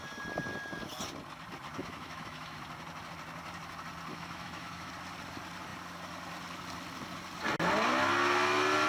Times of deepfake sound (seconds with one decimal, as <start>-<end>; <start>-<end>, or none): 1.8-2.6; 4.1-4.9